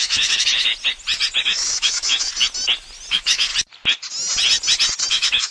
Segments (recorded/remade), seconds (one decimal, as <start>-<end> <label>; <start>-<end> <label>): 0.0-0.7 remade; 0.7-1.4 recorded; 1.4-2.3 remade; 2.3-3.1 recorded; 3.1-3.5 remade; 3.5-5.1 recorded; 5.1-5.5 remade